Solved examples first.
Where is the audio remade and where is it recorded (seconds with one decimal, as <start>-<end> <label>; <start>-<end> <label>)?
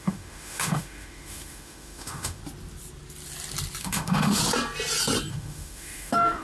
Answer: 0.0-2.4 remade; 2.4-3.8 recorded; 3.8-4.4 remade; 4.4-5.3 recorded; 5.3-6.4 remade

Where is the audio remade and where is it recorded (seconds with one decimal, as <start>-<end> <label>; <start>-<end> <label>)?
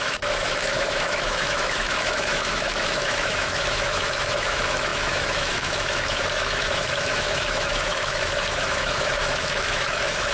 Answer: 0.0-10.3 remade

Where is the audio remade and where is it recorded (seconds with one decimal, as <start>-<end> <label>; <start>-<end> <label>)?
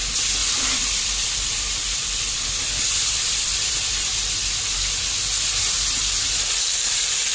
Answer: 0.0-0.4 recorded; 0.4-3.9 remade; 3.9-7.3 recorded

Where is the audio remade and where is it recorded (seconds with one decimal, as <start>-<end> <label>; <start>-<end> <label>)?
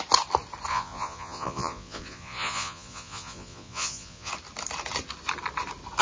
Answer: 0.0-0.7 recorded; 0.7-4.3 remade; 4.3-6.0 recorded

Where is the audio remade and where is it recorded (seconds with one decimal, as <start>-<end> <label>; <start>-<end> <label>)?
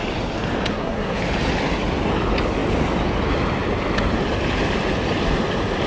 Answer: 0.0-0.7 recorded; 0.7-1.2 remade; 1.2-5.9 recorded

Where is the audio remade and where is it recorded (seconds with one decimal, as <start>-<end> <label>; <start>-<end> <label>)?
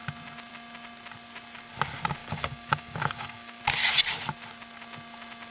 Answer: 0.0-2.2 recorded; 2.2-3.6 remade; 3.6-5.5 recorded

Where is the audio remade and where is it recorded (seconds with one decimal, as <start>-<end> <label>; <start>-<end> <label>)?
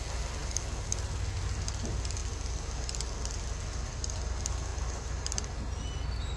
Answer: 0.0-6.4 recorded